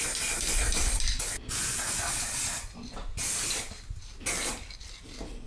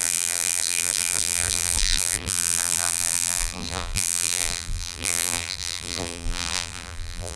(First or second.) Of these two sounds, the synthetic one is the second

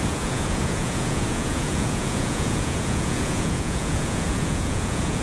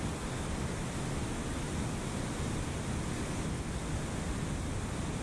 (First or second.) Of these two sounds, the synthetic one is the first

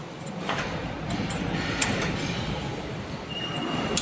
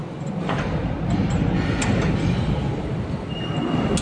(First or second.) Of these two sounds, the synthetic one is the first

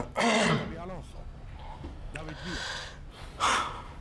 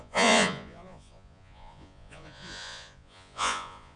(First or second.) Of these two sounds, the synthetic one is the second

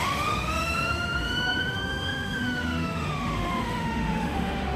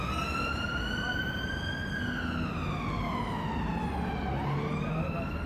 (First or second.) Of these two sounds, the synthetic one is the first